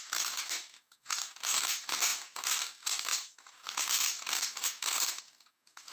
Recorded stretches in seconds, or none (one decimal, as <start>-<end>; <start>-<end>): none